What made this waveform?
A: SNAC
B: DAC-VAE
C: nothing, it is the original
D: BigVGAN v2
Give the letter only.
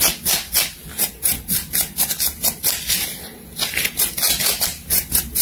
C